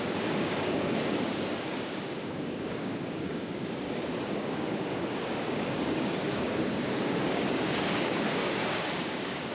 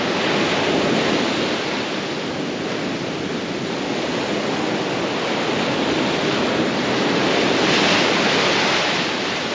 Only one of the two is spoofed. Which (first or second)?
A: first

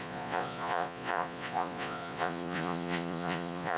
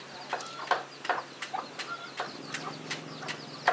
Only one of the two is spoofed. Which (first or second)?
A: first